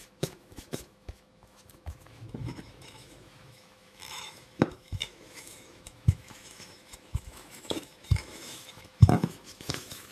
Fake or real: fake